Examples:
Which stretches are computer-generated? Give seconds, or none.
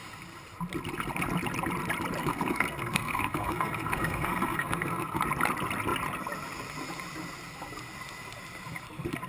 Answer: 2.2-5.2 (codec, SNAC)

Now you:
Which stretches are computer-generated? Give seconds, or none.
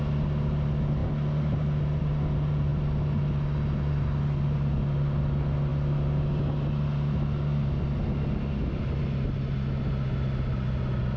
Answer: none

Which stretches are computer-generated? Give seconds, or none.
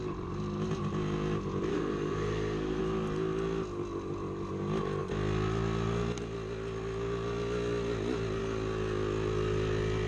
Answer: 1.7-2.8 (codec, SNAC)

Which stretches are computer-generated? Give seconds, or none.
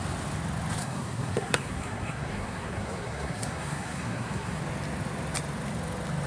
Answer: 0.8-4.6 (codec, SNAC)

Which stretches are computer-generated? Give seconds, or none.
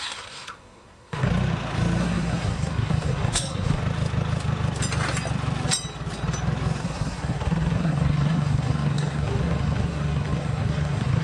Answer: 0.0-1.3 (codec, SNAC); 2.0-3.8; 6.8-11.2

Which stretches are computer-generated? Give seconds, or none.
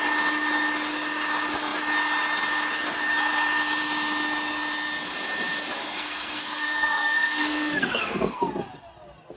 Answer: 5.8-8.5 (codec, SNAC)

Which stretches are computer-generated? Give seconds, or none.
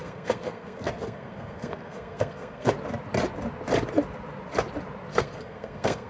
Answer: 0.0-2.7 (codec, SNAC); 5.1-6.1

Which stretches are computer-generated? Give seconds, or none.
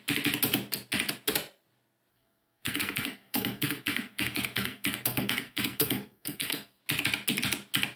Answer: 2.1-6.8 (codec, SNAC)